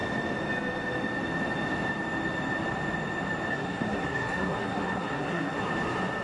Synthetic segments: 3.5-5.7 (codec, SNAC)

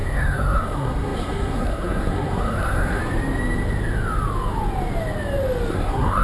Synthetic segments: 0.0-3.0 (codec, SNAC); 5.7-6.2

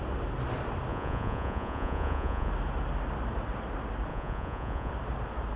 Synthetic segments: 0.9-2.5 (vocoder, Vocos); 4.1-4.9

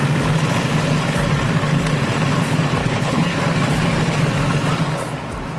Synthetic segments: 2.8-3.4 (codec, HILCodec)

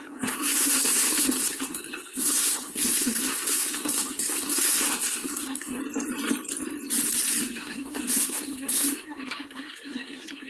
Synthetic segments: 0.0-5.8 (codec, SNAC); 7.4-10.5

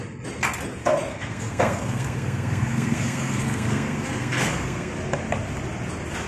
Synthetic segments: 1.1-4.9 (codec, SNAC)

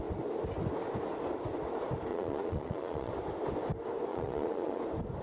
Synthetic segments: 2.1-3.1 (vocoder, Vocos); 4.1-4.8

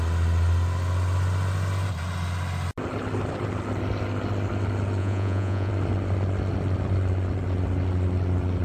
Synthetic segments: 5.0-5.7 (vocoder, Vocos)